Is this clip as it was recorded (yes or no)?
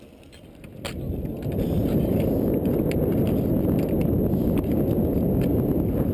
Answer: yes